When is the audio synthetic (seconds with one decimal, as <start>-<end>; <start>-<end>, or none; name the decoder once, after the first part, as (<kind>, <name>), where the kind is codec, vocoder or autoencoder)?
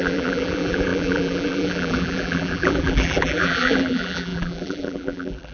0.0-5.5 (vocoder, BigVGAN v2)